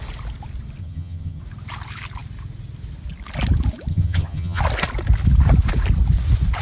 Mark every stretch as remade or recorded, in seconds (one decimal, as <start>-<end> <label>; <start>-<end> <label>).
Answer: 0.0-0.8 recorded; 0.8-1.4 remade; 1.4-3.9 recorded; 3.9-4.6 remade; 4.6-6.6 recorded